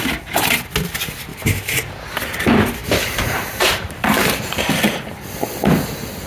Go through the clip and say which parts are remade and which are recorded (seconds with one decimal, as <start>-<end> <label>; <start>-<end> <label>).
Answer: 0.0-1.3 recorded; 1.3-1.9 remade; 1.9-2.8 recorded; 2.8-4.7 remade; 4.7-6.3 recorded